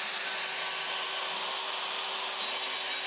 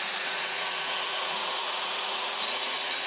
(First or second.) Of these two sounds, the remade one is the second